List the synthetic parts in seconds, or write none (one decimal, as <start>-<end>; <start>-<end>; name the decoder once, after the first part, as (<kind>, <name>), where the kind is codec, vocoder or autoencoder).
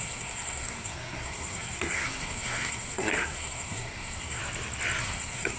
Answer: 0.0-4.4 (codec, SNAC); 5.0-5.6